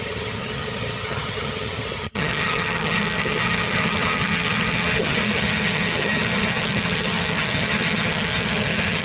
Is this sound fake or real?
fake